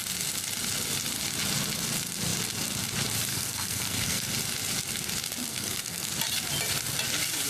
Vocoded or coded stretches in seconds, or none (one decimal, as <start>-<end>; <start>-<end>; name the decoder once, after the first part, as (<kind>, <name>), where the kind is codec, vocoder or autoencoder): 3.3-4.3 (codec, SNAC); 5.5-6.1